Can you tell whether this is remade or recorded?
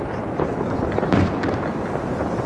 remade